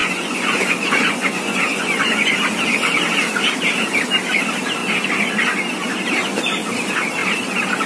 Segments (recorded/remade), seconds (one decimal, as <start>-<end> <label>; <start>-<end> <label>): 0.0-2.3 remade; 2.3-7.9 recorded